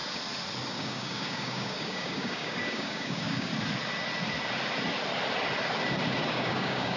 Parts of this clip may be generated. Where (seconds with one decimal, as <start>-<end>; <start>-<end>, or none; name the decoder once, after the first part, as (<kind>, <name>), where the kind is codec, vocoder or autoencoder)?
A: 0.7-3.5 (codec, DAC); 6.3-7.0